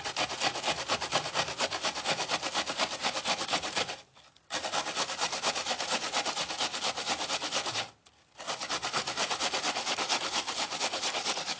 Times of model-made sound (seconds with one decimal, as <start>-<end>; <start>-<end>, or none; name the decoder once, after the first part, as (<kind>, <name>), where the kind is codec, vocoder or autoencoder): none